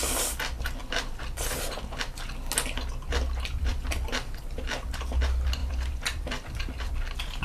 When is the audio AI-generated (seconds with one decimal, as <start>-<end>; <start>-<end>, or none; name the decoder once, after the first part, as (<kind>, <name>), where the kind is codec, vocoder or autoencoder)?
0.8-1.6 (vocoder, BigVGAN v2); 3.7-4.9; 5.6-6.9